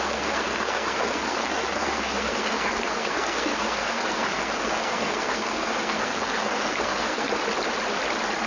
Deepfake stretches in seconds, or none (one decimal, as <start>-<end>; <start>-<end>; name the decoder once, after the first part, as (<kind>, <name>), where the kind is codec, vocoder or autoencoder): 0.0-7.3 (codec, SNAC)